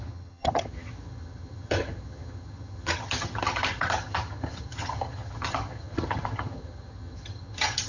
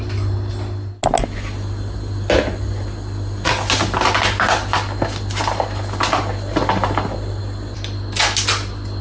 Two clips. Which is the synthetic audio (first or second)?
first